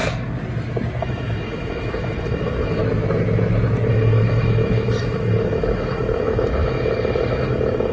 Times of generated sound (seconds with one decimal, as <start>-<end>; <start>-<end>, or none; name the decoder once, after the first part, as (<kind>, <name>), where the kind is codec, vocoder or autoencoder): 1.0-2.8 (autoencoder, DAC-VAE); 3.9-7.9